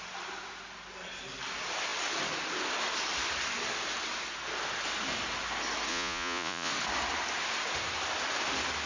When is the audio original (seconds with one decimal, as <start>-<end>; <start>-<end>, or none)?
0.0-5.9; 6.7-8.9